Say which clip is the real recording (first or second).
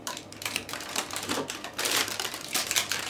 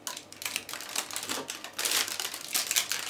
second